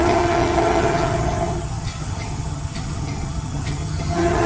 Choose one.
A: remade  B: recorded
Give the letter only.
A